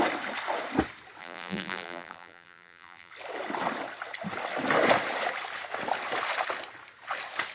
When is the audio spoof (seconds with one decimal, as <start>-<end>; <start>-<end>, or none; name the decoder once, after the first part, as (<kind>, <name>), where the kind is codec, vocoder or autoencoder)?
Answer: 1.2-3.1 (vocoder, BigVGAN v2)